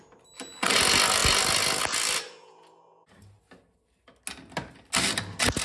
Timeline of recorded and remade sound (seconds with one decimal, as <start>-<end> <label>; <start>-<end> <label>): 0.0-5.6 recorded